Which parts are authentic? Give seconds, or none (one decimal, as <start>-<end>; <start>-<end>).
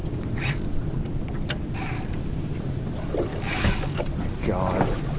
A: 0.0-3.3; 4.0-5.2